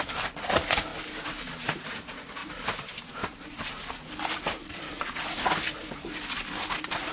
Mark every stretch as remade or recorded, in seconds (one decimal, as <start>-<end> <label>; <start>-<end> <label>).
0.0-2.4 recorded; 2.4-4.1 remade; 4.1-4.6 recorded; 4.6-5.5 remade; 5.5-7.1 recorded